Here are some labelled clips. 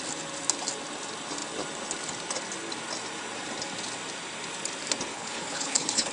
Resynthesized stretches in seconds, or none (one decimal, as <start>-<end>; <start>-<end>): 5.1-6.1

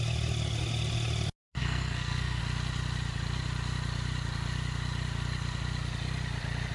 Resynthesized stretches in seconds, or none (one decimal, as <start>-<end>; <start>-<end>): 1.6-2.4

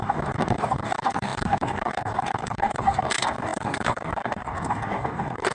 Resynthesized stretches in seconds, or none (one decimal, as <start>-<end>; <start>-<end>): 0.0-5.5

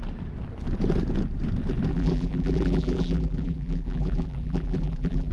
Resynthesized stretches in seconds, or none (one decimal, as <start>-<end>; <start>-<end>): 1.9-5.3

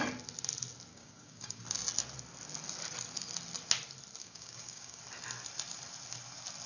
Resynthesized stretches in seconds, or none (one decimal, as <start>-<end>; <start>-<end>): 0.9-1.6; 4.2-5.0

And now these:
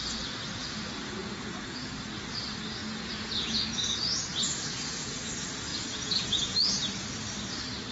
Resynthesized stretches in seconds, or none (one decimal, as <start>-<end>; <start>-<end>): 1.2-1.9; 2.8-5.3; 5.7-6.8

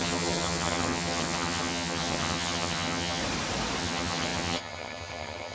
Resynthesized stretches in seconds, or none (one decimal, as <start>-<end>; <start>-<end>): 0.0-3.2; 3.8-5.5